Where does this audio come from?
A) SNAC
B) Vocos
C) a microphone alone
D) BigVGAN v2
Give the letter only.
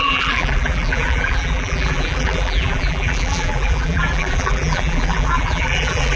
D